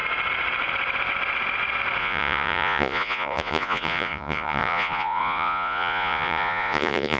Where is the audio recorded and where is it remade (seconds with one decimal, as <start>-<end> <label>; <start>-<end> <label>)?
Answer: 0.0-2.0 recorded; 2.0-7.2 remade